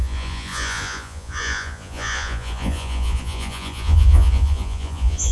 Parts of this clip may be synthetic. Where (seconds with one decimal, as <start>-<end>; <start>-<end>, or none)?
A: 0.0-5.3